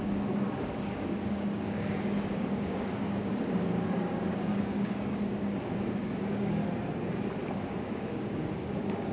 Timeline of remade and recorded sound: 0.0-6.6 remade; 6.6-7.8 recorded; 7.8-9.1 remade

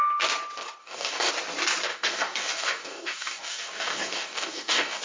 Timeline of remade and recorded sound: 0.0-0.8 recorded; 0.8-1.3 remade; 1.3-1.9 recorded; 1.9-5.0 remade